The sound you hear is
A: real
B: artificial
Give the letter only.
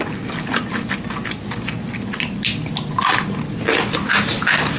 A